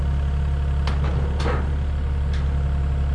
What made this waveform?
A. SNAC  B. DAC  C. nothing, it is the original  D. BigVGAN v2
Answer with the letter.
C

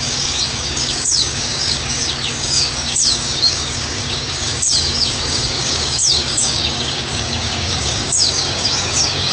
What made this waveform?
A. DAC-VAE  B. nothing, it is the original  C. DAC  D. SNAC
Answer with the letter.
C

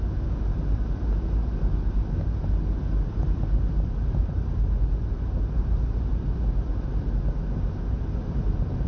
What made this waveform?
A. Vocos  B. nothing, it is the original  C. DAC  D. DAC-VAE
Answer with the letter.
B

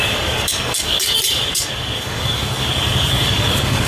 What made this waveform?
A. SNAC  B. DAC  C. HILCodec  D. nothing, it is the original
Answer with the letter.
B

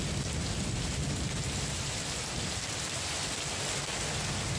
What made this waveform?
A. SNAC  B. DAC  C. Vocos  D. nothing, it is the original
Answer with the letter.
D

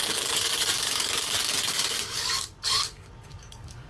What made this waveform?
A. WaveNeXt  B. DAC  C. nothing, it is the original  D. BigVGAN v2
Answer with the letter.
B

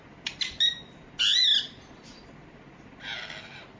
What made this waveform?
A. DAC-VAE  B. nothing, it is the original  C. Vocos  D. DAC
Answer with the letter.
B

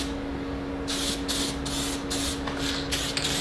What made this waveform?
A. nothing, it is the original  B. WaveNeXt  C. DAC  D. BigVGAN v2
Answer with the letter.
A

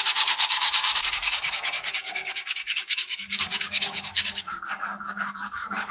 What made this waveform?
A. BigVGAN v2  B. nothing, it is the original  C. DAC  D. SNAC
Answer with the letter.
C